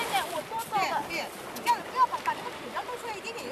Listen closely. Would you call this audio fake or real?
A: real